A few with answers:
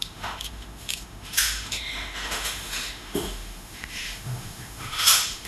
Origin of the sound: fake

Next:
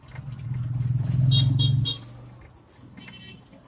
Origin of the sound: real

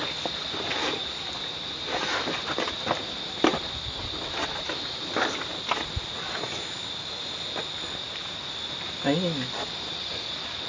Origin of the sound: real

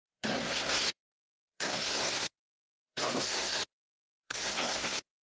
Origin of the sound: fake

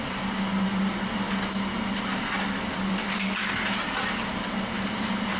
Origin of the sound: real